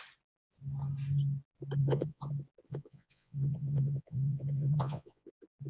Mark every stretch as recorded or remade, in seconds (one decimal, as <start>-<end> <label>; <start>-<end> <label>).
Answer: 0.0-1.8 recorded; 1.8-2.3 remade; 2.3-2.7 recorded; 2.7-5.3 remade; 5.3-5.7 recorded